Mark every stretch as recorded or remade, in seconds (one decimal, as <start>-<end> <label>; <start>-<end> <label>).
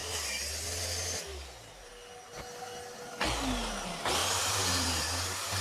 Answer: 0.0-1.3 recorded; 1.3-1.9 remade; 1.9-4.2 recorded; 4.2-5.0 remade; 5.0-5.6 recorded